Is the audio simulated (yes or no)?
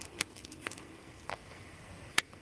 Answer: yes